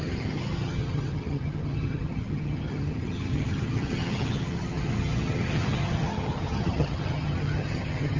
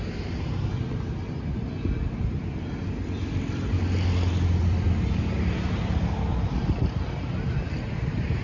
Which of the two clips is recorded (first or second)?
second